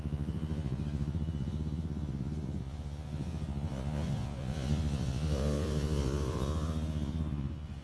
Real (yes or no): no